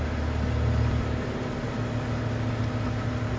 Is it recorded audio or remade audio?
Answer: recorded